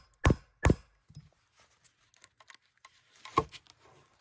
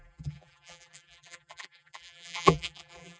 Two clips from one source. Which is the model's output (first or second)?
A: second